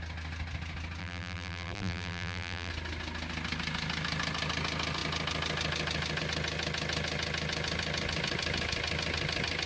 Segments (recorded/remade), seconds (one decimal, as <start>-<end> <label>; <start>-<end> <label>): 0.0-1.0 recorded; 1.0-2.7 remade; 2.7-9.7 recorded